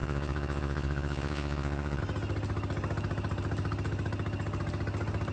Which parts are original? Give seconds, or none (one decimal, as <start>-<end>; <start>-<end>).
2.0-5.3